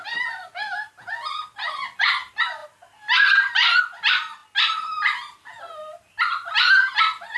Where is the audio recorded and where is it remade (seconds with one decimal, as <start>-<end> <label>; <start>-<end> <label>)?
0.0-7.4 recorded